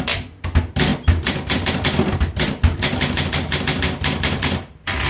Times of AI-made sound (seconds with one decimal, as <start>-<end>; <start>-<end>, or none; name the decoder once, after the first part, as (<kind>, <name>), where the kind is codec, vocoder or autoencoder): none

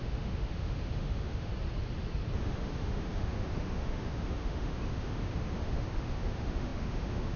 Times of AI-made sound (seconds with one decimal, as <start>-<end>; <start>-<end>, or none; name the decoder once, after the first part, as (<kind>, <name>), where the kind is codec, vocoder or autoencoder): 0.0-1.5 (autoencoder, DAC-VAE); 2.4-7.4

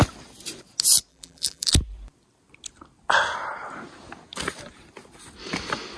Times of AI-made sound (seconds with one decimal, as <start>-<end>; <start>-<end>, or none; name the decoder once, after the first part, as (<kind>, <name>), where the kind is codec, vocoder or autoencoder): 1.1-1.7 (vocoder, BigVGAN v2)

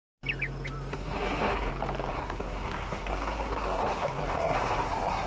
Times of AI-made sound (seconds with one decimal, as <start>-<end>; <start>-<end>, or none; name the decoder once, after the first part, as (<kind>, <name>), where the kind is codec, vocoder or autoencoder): 0.9-1.7 (codec, SNAC); 2.1-5.3